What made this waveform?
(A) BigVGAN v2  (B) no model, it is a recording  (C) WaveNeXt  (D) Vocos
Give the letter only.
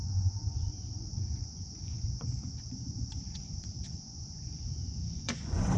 D